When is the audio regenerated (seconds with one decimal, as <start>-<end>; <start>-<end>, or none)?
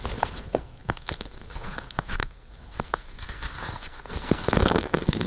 0.0-5.3